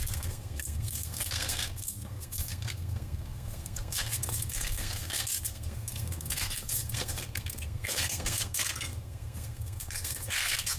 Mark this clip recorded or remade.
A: remade